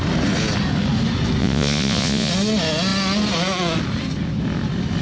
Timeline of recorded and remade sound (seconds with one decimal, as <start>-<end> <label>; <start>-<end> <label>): 0.0-1.4 recorded; 1.4-2.3 remade; 2.3-5.0 recorded